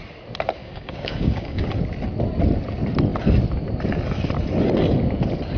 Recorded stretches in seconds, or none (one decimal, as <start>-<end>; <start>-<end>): 0.0-0.6; 1.7-5.6